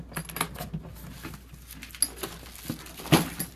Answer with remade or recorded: recorded